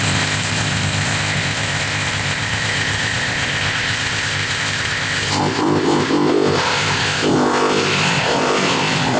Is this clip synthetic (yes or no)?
yes